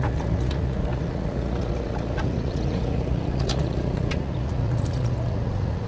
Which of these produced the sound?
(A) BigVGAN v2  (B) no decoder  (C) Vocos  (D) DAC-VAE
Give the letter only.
C